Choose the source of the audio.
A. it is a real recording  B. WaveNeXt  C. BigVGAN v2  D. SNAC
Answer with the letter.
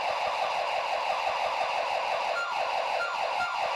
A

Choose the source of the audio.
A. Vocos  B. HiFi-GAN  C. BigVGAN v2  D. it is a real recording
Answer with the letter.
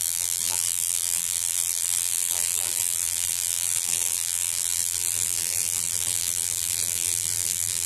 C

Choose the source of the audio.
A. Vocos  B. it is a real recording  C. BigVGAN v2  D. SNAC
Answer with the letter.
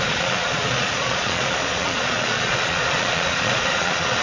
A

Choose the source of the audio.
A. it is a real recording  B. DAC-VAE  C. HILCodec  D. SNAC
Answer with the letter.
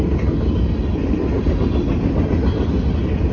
A